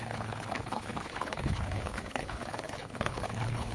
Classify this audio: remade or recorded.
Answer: remade